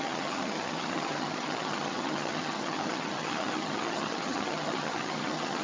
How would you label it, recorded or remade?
remade